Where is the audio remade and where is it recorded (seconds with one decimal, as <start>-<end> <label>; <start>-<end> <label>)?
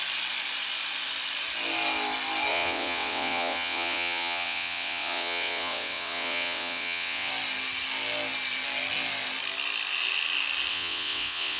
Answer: 0.0-2.5 recorded; 2.5-7.3 remade; 7.3-10.7 recorded; 10.7-11.6 remade